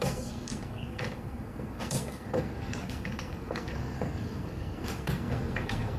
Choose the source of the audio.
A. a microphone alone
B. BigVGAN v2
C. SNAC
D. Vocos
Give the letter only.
C